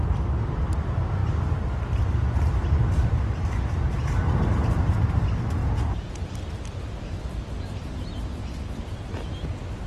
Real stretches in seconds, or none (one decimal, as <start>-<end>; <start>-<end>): 0.0-5.6; 6.3-9.9